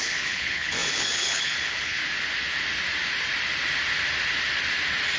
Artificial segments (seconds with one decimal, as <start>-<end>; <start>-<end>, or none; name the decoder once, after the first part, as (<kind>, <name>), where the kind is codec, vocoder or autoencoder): 0.0-2.0 (codec, HILCodec)